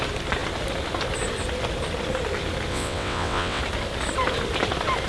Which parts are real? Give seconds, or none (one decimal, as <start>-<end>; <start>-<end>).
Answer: 0.0-2.7; 3.6-5.1